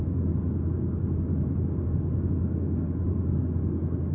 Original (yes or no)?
no